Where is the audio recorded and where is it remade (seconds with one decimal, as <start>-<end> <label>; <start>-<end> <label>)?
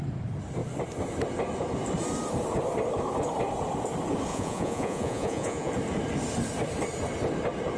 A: 0.0-4.3 recorded; 4.3-5.7 remade; 5.7-7.8 recorded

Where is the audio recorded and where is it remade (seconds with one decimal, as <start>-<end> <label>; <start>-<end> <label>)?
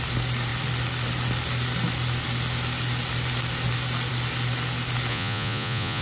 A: 0.0-5.1 recorded; 5.1-6.0 remade